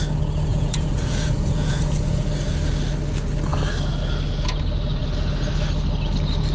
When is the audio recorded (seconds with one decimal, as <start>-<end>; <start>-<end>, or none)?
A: 0.0-0.5; 2.3-6.5